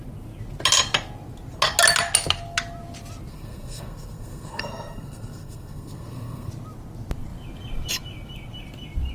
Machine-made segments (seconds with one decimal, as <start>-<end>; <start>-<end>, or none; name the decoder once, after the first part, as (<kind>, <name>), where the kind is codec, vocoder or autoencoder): 3.3-6.5 (codec, SNAC)